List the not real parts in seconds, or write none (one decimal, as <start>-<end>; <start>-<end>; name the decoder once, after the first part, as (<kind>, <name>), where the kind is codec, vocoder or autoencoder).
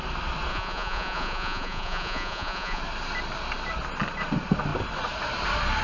0.5-2.8 (vocoder, Vocos)